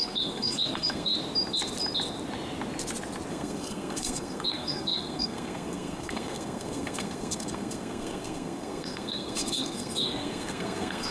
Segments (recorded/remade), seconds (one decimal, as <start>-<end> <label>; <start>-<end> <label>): 0.0-1.1 remade; 1.1-3.3 recorded; 3.3-11.1 remade